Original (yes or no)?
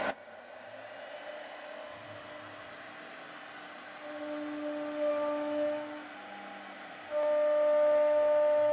yes